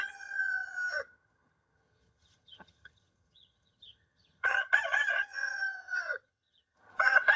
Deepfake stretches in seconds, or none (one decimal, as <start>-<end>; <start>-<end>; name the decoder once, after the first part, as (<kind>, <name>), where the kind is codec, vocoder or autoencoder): 0.0-7.4 (vocoder, HiFi-GAN)